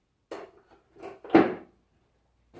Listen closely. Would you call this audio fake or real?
real